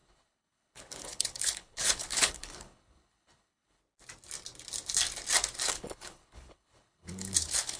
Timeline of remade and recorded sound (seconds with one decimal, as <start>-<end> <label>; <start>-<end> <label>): 0.0-3.8 remade; 3.8-5.7 recorded; 5.7-7.8 remade